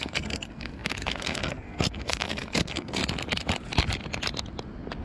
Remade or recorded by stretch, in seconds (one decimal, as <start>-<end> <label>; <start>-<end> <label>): 0.0-3.0 remade; 3.0-5.0 recorded